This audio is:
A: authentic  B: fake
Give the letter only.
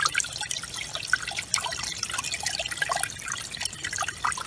A